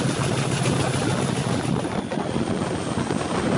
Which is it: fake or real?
real